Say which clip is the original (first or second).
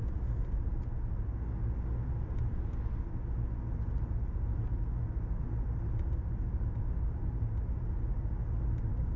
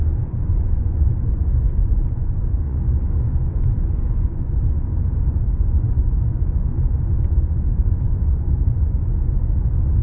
first